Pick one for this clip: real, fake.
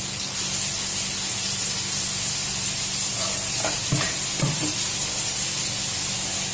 real